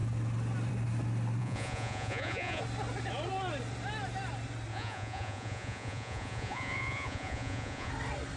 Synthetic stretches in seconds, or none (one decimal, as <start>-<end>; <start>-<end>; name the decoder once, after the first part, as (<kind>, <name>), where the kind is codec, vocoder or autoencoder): 1.4-2.6 (vocoder, Vocos); 4.7-7.9